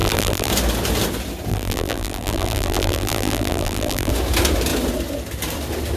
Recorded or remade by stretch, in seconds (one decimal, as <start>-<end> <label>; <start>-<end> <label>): 0.0-0.5 remade; 0.5-1.5 recorded; 1.5-4.1 remade; 4.1-6.0 recorded